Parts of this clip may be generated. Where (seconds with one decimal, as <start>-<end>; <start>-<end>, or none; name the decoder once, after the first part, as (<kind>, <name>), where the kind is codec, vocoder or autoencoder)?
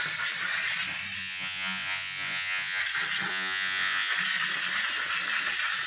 1.2-2.8 (vocoder, Vocos); 3.3-4.1